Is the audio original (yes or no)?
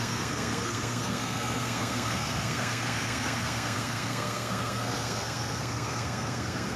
no